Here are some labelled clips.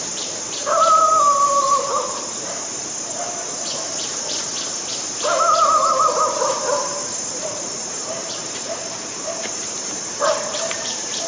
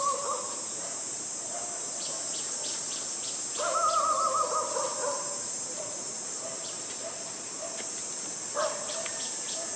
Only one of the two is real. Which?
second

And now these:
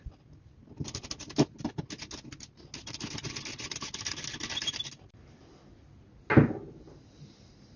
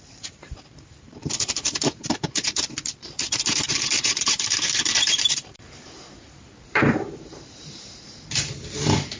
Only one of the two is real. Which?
first